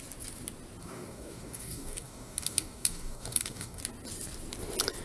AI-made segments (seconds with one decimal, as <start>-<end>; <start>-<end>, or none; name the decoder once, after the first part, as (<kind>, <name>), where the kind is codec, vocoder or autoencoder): 0.8-3.8 (codec, DAC)